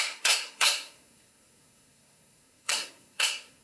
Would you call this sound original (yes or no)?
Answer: no